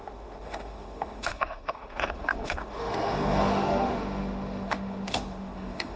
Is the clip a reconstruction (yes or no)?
yes